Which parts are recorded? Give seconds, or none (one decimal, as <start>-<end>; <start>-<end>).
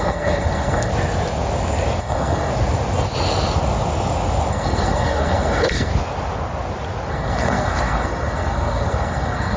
0.9-2.0; 2.5-4.5; 5.9-7.1